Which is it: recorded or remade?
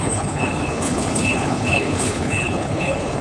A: remade